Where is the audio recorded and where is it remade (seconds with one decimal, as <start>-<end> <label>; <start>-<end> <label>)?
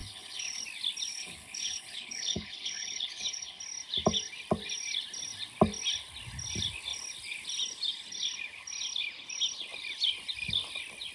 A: 0.0-0.6 remade; 0.6-1.1 recorded; 1.1-3.6 remade; 3.6-11.1 recorded